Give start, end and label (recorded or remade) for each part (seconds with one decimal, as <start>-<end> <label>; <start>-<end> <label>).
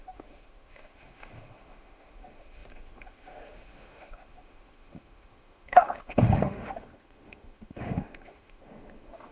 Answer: 0.0-9.3 remade